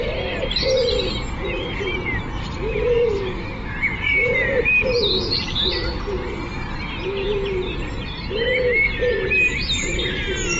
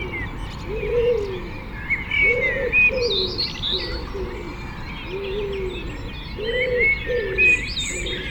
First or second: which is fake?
first